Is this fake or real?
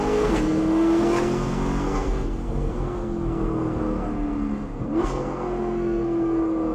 fake